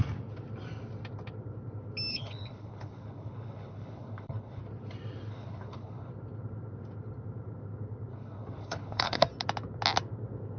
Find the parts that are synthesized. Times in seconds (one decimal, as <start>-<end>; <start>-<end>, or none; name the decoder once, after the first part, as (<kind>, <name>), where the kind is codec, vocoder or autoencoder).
2.1-4.6 (codec, HILCodec); 5.3-6.1; 8.1-9.2